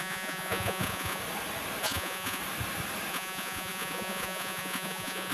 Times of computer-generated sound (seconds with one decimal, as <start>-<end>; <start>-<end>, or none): 0.0-1.2; 1.8-2.4; 3.1-5.3